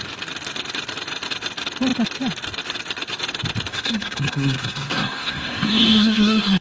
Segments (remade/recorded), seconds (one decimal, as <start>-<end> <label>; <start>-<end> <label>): 0.0-3.7 recorded; 3.7-6.6 remade